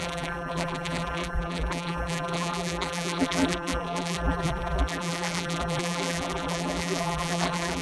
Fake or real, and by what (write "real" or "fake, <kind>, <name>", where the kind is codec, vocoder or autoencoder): fake, vocoder, BigVGAN v2